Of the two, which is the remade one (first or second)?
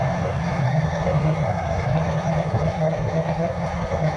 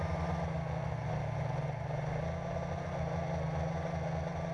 first